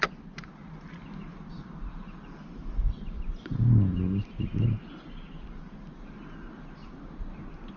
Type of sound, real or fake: real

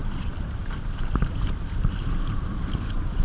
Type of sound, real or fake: fake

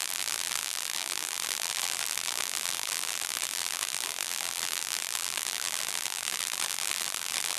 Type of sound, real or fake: fake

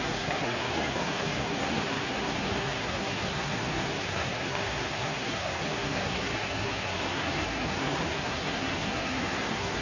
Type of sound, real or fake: fake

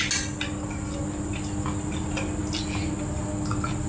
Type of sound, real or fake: real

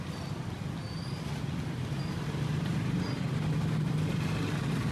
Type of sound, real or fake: real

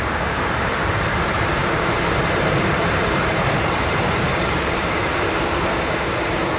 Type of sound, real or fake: fake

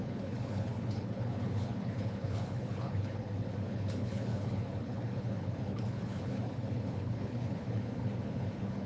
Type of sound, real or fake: fake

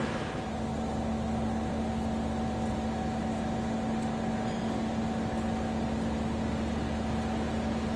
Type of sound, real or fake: real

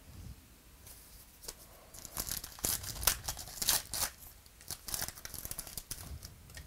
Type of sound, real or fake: real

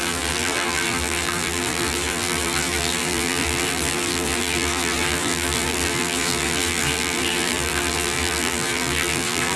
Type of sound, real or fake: fake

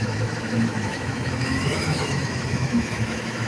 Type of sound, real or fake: fake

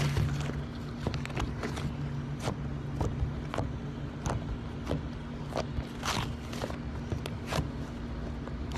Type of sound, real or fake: real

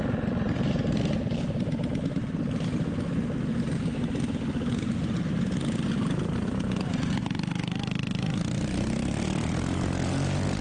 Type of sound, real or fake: real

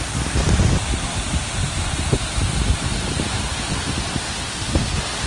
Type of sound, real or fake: real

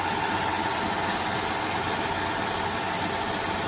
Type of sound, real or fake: real